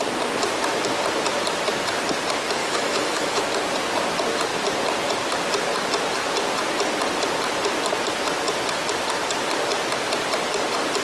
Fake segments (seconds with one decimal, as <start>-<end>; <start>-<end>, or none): 2.6-3.4